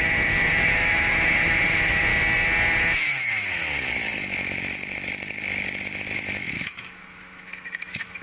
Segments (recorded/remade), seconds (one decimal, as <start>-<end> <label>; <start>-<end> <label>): 0.0-2.1 remade; 2.1-2.8 recorded; 2.8-8.2 remade